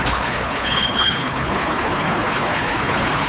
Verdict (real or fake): fake